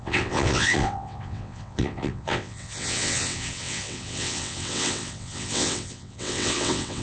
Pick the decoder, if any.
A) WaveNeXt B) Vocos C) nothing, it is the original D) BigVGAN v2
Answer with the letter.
A